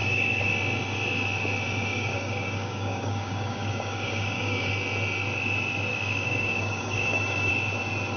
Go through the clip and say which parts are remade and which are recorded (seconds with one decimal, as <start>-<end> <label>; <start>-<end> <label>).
0.0-0.5 remade; 0.5-1.9 recorded; 1.9-4.7 remade; 4.7-5.9 recorded; 5.9-7.5 remade; 7.5-8.2 recorded